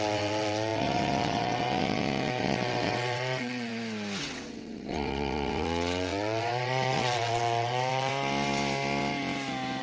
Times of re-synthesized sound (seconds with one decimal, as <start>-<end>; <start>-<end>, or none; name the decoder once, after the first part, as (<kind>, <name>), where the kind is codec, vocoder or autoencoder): 0.0-3.7 (vocoder, WaveNeXt); 4.2-8.1